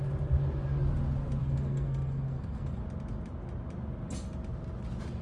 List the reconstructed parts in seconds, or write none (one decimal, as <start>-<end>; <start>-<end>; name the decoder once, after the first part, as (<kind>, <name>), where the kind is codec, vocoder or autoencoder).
1.4-2.8 (codec, SNAC)